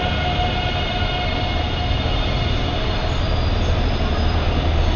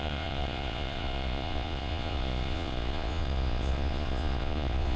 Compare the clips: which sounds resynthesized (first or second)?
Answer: second